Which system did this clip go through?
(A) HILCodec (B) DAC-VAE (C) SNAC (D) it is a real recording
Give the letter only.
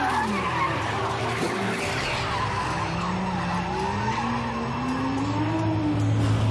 D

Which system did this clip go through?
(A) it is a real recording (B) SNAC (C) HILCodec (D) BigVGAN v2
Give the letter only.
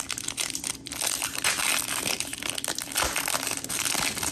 A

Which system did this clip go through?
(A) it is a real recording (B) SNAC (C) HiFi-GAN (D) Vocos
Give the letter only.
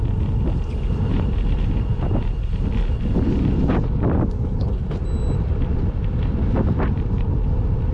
A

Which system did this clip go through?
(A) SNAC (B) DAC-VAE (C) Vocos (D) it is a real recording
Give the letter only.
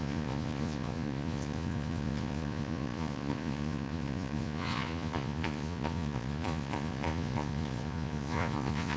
C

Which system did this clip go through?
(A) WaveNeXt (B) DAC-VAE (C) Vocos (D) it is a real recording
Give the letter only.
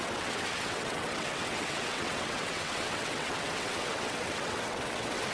A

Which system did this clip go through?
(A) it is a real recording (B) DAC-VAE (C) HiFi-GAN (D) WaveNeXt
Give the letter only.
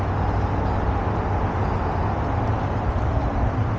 A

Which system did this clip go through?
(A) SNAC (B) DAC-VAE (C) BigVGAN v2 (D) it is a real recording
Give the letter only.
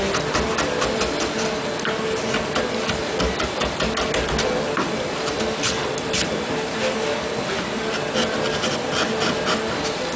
D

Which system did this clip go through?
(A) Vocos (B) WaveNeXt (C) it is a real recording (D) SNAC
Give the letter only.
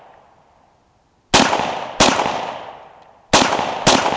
C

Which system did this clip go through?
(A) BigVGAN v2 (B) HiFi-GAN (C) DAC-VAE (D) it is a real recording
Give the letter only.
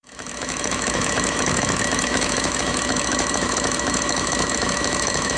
C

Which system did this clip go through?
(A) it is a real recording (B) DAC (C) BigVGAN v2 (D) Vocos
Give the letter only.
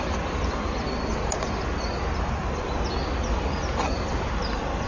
A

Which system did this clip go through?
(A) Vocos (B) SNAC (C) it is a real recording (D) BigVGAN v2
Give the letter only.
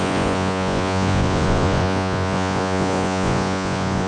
A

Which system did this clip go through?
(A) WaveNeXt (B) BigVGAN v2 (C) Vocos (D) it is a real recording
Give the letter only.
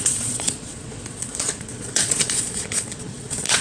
C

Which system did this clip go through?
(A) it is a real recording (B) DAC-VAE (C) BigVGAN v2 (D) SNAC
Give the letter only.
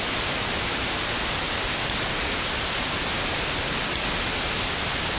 A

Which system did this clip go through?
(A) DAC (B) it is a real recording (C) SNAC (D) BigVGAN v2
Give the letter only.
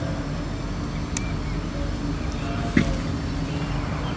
B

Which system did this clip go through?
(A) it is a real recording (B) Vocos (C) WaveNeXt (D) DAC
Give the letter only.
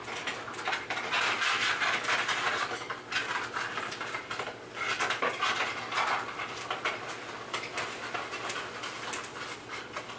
A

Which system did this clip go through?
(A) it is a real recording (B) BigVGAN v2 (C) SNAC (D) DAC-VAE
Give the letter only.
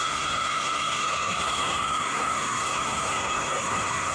C